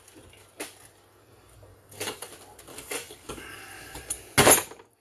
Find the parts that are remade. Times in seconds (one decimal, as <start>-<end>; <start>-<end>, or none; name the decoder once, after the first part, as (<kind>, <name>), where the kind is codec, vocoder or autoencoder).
1.7-2.3 (codec, DAC); 2.7-4.0